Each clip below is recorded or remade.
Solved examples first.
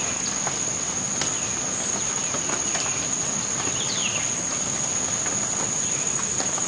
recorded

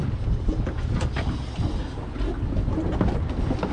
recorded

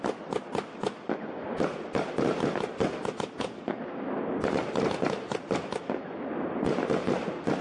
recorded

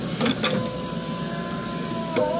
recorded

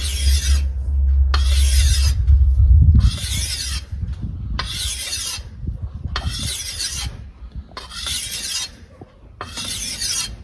recorded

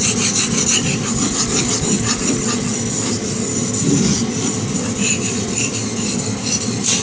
recorded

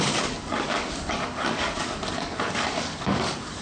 remade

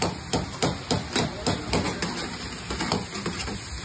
recorded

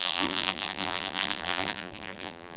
remade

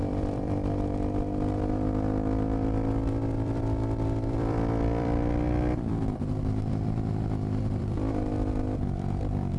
remade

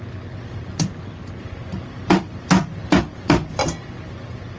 recorded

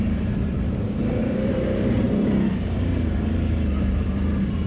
remade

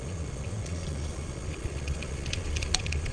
remade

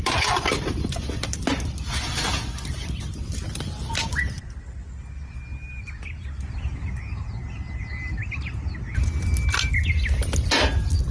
recorded